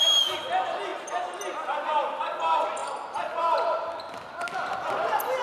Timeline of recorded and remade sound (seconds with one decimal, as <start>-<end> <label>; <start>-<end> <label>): 0.0-5.4 recorded